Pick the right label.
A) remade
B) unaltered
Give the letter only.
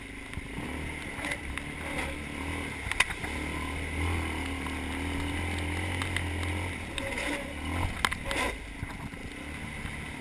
B